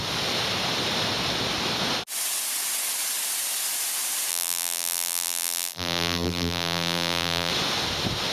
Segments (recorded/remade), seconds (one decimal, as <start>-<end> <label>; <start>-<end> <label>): 0.0-4.3 recorded; 4.3-7.5 remade; 7.5-8.3 recorded